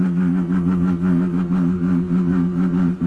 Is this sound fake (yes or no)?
yes